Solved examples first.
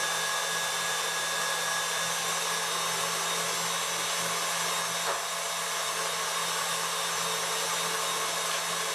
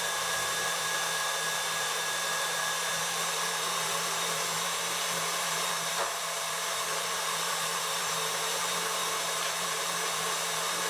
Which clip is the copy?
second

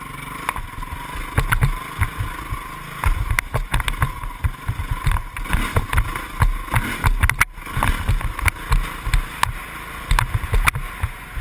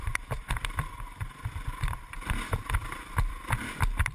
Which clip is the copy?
second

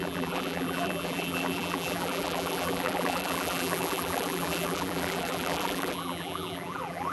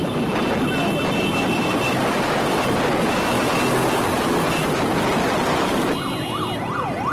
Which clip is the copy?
first